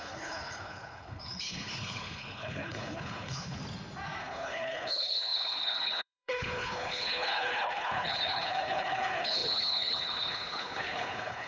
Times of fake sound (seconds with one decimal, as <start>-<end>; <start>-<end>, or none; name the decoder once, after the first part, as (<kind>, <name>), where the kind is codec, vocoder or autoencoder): 0.0-3.6 (codec, HILCodec); 4.2-11.5